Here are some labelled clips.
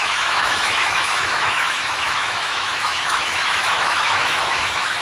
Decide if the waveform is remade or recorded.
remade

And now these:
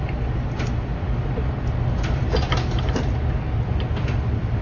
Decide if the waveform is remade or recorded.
recorded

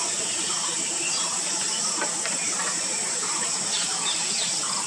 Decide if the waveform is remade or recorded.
recorded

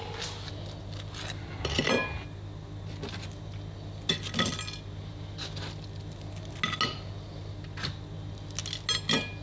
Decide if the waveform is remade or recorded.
recorded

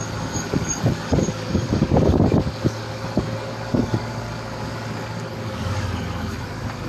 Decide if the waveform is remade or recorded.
remade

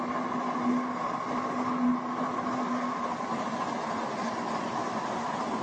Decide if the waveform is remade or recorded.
recorded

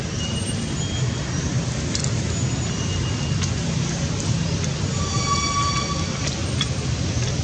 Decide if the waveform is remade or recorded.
recorded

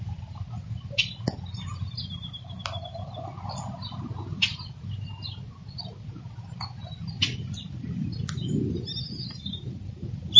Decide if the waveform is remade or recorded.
recorded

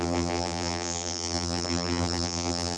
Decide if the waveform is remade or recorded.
remade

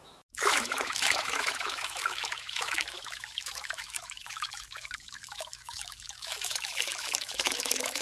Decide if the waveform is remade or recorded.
remade